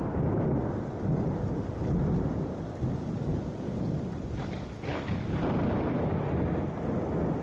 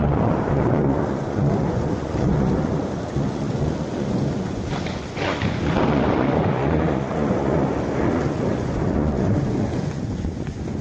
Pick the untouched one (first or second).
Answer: first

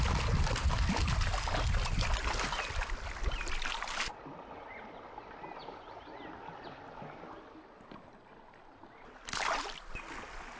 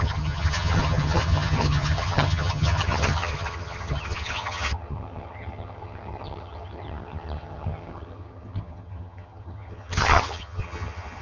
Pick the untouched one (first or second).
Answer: first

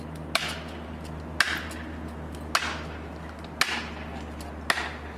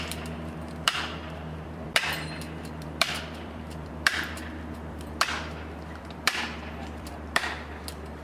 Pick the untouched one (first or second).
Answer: first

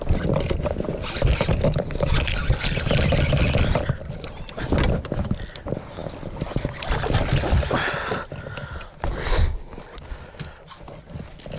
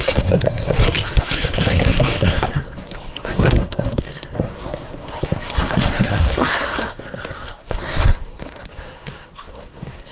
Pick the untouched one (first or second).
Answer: first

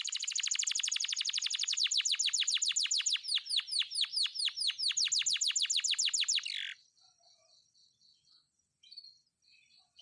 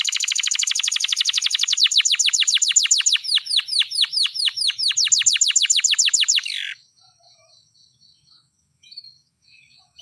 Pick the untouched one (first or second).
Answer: first